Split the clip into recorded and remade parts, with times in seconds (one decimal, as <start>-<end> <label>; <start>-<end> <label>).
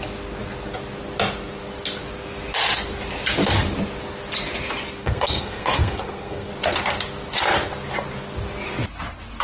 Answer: 0.0-5.0 recorded; 5.0-6.5 remade; 6.5-9.4 recorded